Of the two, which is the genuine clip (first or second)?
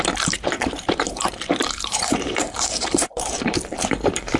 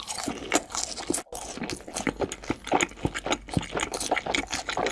second